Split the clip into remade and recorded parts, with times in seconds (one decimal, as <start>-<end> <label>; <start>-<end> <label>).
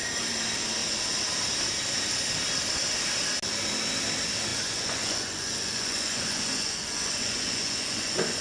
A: 0.0-4.5 recorded; 4.5-8.4 remade